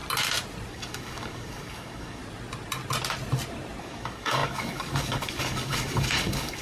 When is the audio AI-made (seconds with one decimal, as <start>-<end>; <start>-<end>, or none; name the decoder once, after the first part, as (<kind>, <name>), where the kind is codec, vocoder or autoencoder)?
0.7-2.2 (codec, DAC); 3.8-6.6